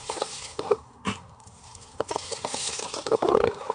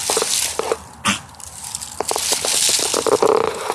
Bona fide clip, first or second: second